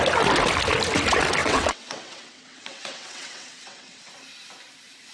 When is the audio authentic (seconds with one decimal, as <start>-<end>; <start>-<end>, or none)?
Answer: 0.0-1.4; 4.1-5.1

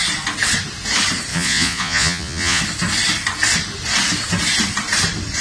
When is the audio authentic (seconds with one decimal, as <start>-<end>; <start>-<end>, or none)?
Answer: 0.0-1.3; 2.6-5.4

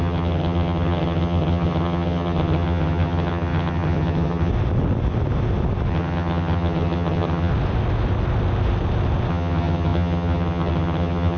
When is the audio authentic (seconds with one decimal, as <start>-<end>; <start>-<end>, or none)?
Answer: 4.5-5.9; 7.5-9.3

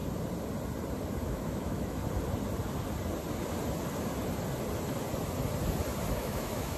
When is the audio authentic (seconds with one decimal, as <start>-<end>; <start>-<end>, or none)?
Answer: 0.0-1.2; 2.0-6.1